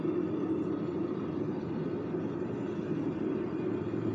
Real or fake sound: fake